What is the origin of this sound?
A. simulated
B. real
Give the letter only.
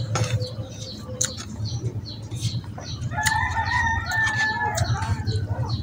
A